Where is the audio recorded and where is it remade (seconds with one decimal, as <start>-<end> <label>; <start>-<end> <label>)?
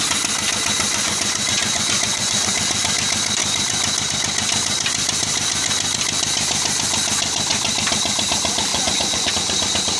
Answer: 0.0-0.9 recorded; 0.9-2.5 remade; 2.5-8.7 recorded; 8.7-9.3 remade; 9.3-10.0 recorded